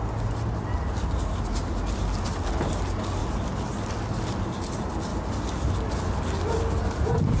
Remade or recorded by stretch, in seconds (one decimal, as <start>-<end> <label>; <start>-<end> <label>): 0.0-7.4 recorded